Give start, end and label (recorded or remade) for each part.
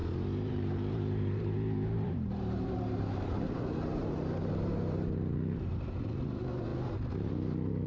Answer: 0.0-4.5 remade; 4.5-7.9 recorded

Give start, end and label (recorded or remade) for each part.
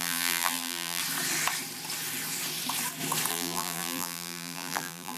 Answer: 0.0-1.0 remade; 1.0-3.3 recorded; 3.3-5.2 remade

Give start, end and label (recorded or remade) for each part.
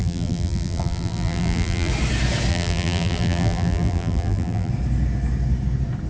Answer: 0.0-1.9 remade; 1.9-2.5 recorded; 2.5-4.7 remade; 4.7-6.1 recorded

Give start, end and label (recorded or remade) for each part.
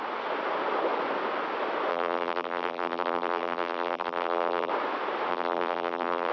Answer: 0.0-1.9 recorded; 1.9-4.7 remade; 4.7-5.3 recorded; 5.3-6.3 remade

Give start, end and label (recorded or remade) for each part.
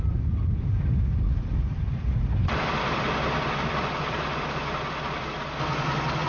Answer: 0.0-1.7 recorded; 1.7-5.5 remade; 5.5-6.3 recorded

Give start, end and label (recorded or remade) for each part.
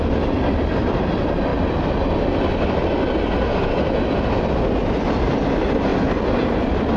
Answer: 0.0-5.9 recorded; 5.9-7.0 remade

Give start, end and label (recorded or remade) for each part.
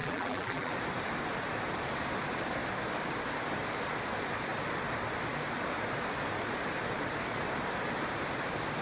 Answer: 0.0-0.7 remade; 0.7-8.8 recorded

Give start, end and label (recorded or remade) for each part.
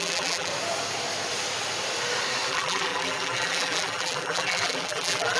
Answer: 0.0-0.5 remade; 0.5-2.5 recorded; 2.5-5.4 remade